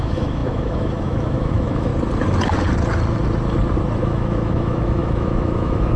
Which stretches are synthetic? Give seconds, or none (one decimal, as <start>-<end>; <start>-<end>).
0.0-1.9; 4.0-6.0